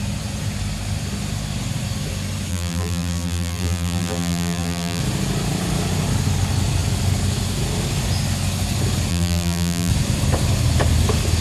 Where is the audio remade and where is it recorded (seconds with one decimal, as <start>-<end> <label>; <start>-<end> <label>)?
0.0-2.5 recorded; 2.5-5.0 remade; 5.0-9.1 recorded; 9.1-9.9 remade; 9.9-11.4 recorded